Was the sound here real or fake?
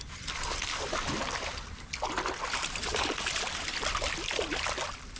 real